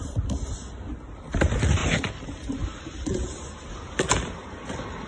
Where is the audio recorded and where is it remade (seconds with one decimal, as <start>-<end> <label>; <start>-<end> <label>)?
0.0-1.8 recorded; 1.8-3.7 remade; 3.7-5.1 recorded